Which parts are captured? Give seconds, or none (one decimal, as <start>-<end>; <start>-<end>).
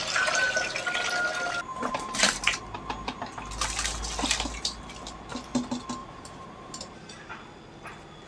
0.0-1.7; 2.6-6.0; 7.3-8.3